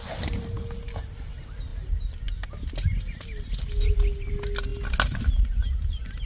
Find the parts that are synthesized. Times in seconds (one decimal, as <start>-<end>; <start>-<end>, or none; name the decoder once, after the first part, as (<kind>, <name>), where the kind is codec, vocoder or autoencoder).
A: none